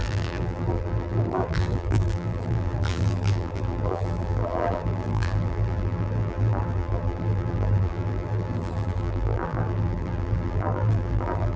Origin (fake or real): fake